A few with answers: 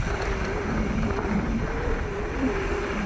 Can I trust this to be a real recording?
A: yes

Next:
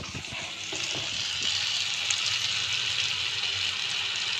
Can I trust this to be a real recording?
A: yes